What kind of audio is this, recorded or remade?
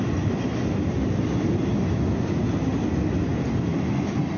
recorded